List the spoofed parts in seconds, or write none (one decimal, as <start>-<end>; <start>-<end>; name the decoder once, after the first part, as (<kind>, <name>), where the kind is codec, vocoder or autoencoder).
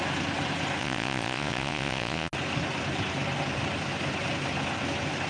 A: 0.8-2.3 (vocoder, Vocos)